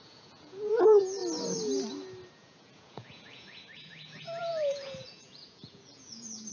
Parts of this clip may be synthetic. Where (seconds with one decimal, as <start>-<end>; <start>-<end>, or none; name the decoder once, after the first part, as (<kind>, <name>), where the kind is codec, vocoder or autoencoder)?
0.0-1.2 (vocoder, Vocos); 2.3-6.5